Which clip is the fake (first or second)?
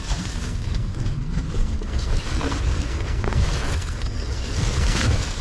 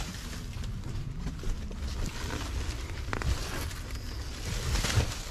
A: first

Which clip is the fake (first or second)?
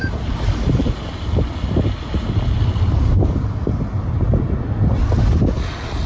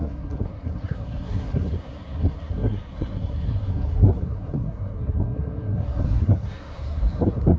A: second